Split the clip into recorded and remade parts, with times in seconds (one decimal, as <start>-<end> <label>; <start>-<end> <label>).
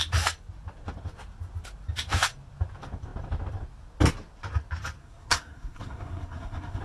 0.0-5.0 recorded; 5.0-6.8 remade